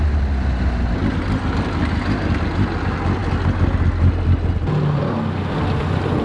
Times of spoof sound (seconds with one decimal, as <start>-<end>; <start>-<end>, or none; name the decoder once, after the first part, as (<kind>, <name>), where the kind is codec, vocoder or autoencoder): none